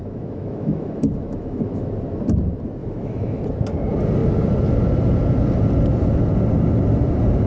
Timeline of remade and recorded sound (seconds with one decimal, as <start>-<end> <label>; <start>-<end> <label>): 0.0-1.9 remade; 1.9-2.8 recorded; 2.8-3.4 remade; 3.4-7.5 recorded